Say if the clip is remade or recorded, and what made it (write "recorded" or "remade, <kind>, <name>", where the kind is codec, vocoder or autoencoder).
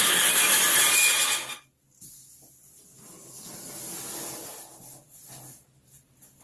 recorded